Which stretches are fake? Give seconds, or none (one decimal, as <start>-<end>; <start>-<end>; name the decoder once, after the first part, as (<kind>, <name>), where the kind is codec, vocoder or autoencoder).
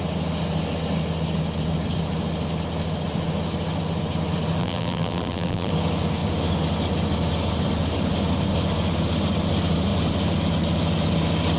4.6-5.7 (vocoder, BigVGAN v2)